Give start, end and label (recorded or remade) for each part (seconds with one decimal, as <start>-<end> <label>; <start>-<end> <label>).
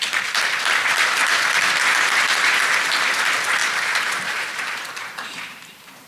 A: 0.0-1.9 recorded; 1.9-2.6 remade; 2.6-3.6 recorded; 3.6-6.1 remade